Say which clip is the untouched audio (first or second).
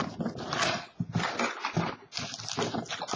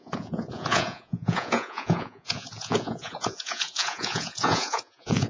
first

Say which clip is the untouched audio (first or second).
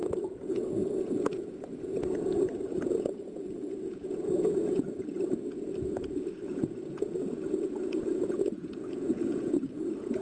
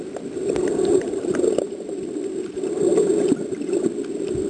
second